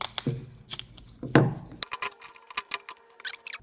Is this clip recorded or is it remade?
recorded